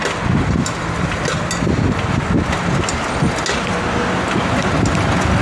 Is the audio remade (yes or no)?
no